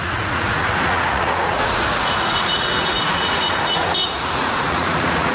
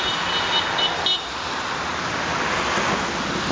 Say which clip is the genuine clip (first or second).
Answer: second